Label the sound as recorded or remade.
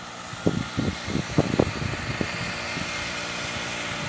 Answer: recorded